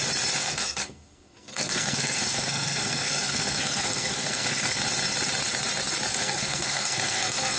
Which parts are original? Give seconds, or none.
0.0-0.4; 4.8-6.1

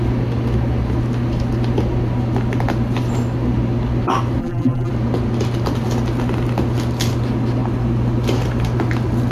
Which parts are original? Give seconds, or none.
0.0-4.4; 4.9-9.3